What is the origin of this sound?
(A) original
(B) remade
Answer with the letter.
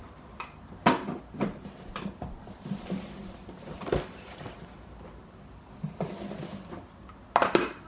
A